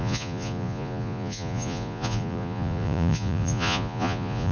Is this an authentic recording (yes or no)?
no